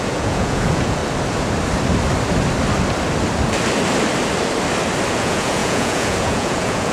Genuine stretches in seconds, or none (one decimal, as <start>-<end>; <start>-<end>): 1.0-5.1